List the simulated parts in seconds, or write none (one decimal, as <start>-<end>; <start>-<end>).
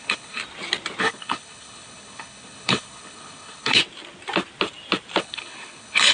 0.0-0.4; 1.0-3.8; 5.2-6.1